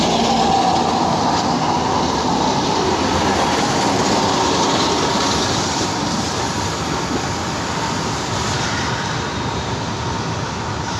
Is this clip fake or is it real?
real